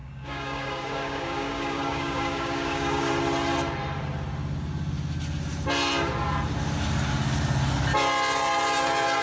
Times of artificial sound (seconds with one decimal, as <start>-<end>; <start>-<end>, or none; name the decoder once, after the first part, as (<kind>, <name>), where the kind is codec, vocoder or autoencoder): 0.0-3.1 (codec, DAC)